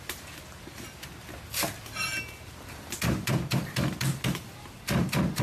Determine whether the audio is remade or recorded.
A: recorded